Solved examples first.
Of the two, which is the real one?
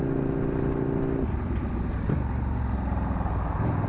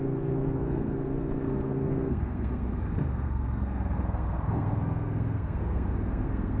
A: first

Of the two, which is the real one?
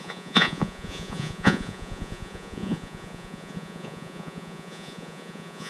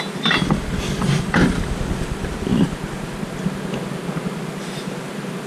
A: second